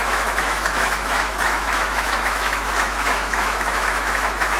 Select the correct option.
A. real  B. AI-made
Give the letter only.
B